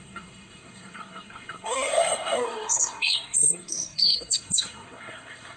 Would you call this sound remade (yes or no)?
yes